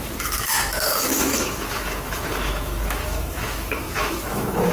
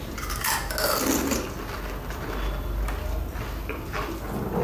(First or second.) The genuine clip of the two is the second